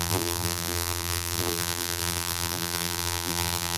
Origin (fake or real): fake